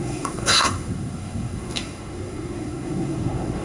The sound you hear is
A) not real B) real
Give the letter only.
A